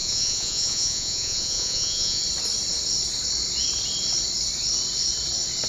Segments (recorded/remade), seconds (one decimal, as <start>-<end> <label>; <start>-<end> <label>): 0.0-2.2 remade; 2.2-5.7 recorded